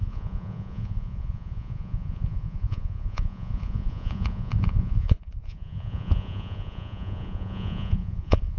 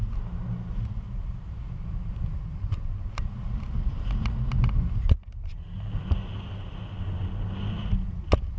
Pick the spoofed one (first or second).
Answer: first